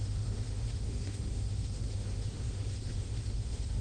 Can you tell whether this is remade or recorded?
remade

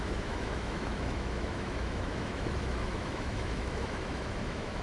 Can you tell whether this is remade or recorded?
remade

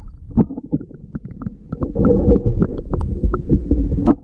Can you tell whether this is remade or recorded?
recorded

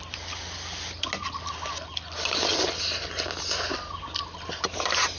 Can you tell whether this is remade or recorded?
recorded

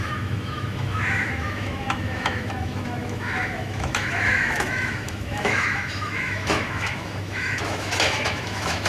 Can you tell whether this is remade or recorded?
remade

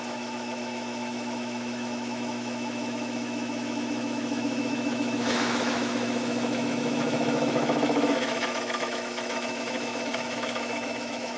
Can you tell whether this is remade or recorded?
remade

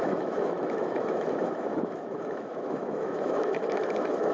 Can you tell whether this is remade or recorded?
remade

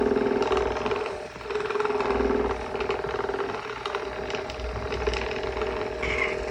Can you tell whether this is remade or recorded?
recorded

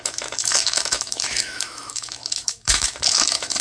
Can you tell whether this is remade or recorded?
remade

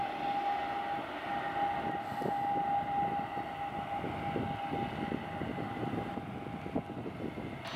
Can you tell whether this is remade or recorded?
recorded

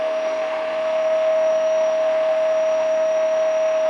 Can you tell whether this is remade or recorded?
remade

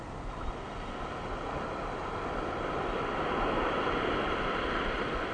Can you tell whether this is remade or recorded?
recorded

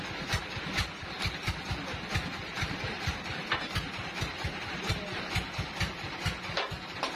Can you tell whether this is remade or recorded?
recorded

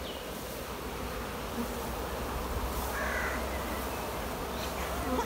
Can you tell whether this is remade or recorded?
recorded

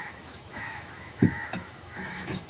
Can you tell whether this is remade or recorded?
remade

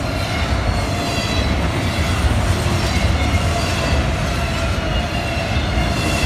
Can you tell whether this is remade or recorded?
recorded